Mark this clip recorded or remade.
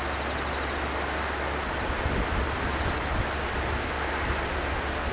recorded